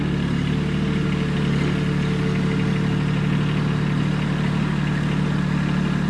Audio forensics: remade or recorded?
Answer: recorded